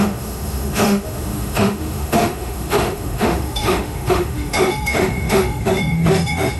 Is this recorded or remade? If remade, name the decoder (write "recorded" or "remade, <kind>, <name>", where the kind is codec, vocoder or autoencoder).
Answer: remade, autoencoder, DAC-VAE